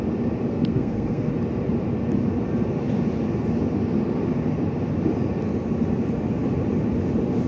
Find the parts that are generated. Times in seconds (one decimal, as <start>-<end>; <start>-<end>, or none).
0.5-1.3